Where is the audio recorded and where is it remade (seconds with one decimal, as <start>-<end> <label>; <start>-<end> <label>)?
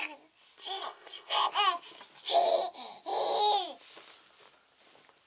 0.0-0.6 recorded; 0.6-1.5 remade; 1.5-5.3 recorded